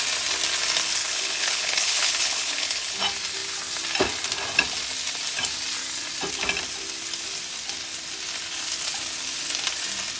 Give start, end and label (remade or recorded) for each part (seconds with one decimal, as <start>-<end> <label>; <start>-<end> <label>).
0.0-1.0 recorded; 1.0-3.0 remade; 3.0-10.2 recorded